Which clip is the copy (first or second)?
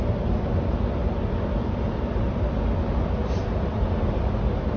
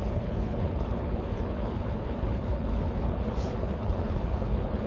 second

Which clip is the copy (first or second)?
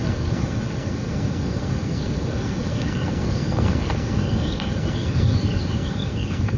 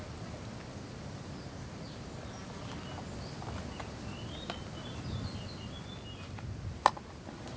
first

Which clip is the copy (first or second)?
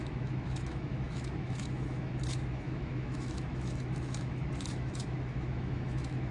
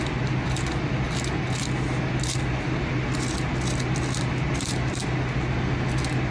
first